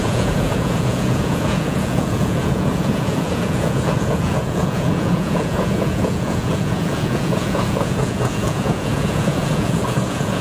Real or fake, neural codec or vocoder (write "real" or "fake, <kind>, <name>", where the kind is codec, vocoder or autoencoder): fake, vocoder, Vocos